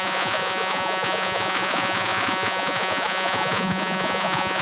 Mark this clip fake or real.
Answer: fake